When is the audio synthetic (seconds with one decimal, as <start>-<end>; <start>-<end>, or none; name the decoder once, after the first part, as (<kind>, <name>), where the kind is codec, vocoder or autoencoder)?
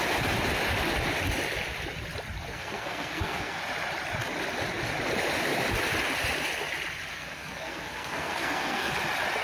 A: 2.5-3.6 (codec, SNAC); 7.1-8.9